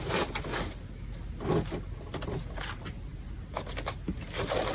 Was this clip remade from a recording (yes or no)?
no